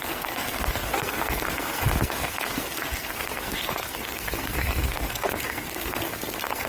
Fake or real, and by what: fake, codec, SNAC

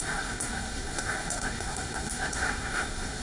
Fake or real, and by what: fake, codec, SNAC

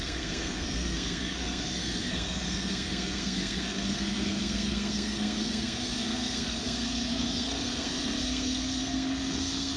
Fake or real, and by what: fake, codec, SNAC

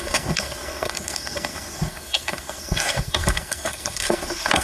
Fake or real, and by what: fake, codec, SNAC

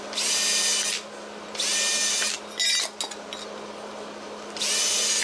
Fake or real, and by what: real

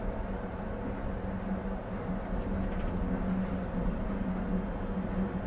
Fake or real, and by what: real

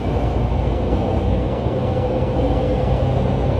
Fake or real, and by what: fake, codec, SNAC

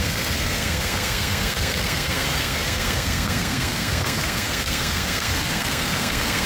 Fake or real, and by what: fake, codec, SNAC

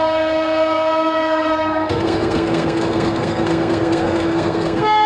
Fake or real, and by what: fake, codec, SNAC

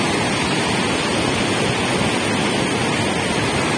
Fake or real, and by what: real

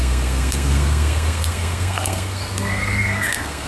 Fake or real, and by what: fake, codec, SNAC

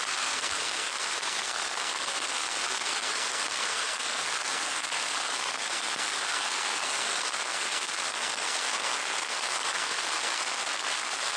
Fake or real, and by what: fake, codec, SNAC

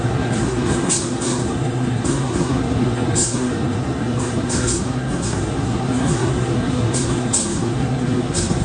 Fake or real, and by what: fake, codec, SNAC